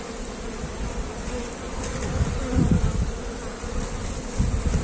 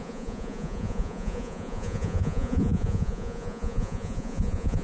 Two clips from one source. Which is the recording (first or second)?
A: first